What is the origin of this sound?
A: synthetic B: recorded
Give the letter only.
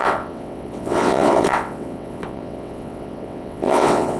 A